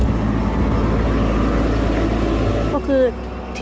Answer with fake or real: real